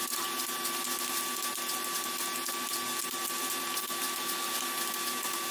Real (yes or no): yes